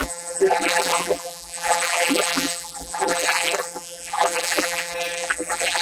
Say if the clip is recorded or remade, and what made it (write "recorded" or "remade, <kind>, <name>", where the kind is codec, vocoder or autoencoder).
remade, vocoder, BigVGAN v2